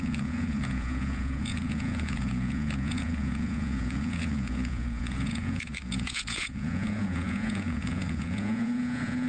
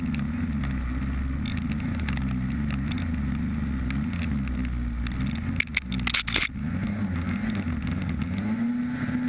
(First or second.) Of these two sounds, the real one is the second